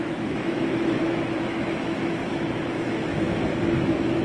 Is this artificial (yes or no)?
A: yes